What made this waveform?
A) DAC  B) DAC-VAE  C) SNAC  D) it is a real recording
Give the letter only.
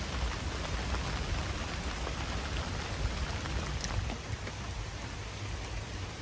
D